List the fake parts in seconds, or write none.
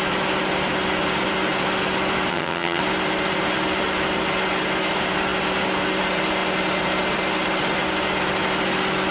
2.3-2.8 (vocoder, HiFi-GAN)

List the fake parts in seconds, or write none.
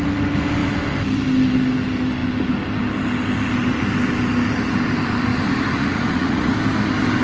5.3-6.5 (vocoder, Vocos)